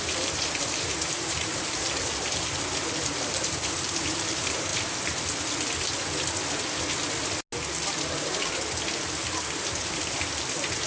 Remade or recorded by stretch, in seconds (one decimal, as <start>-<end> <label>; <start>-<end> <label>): 0.0-4.7 remade; 4.7-9.8 recorded; 9.8-10.9 remade